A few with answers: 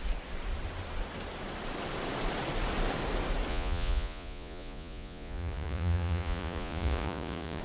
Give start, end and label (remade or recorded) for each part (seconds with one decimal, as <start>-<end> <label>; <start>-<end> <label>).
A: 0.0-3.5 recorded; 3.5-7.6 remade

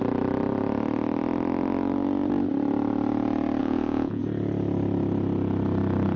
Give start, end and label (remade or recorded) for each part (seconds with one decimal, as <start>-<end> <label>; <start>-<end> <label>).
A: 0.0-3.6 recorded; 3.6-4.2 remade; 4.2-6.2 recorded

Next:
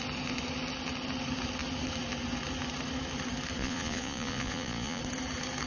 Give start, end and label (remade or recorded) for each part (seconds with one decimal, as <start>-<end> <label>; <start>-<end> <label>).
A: 0.0-3.6 recorded; 3.6-5.0 remade; 5.0-5.7 recorded